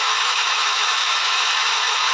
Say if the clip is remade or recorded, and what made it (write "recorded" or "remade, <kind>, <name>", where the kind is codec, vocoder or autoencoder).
remade, autoencoder, DAC-VAE